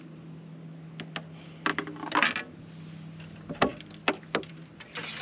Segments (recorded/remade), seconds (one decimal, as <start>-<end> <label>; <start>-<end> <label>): 0.0-5.2 recorded